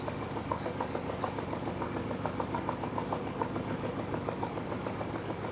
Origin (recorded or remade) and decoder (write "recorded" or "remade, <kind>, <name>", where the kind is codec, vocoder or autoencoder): remade, codec, DAC